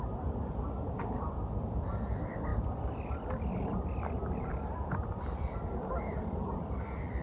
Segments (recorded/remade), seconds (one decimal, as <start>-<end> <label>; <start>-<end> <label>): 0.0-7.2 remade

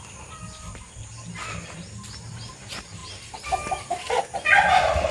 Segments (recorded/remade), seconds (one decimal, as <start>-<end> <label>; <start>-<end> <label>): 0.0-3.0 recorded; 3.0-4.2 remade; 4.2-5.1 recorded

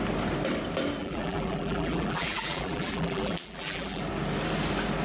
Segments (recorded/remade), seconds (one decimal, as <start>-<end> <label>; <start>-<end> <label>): 0.0-1.0 recorded; 1.0-4.0 remade; 4.0-5.0 recorded

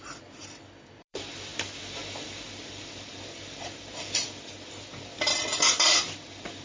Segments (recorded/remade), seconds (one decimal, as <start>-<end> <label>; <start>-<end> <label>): 0.0-1.5 remade; 1.5-2.5 recorded; 2.5-6.6 remade